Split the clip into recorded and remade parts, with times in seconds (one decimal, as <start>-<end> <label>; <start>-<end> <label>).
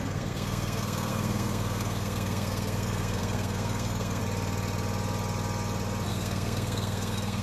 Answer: 0.0-4.2 remade; 4.2-6.1 recorded; 6.1-7.4 remade